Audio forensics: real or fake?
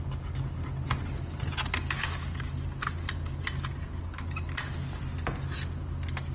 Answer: real